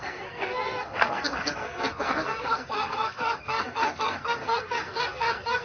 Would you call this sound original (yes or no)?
no